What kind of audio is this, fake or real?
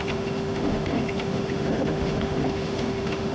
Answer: fake